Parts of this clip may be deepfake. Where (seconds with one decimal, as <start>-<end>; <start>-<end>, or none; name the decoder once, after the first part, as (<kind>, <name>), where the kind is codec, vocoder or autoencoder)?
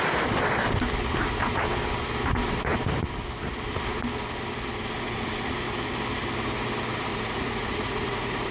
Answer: 7.1-8.5 (vocoder, Vocos)